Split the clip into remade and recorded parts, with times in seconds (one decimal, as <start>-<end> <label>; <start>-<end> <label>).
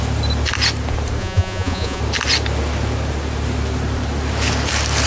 0.0-1.2 recorded; 1.2-2.0 remade; 2.0-5.1 recorded